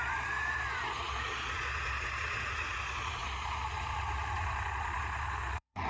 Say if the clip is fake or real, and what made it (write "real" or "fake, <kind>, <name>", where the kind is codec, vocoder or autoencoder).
fake, vocoder, Vocos